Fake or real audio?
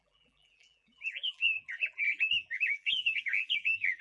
fake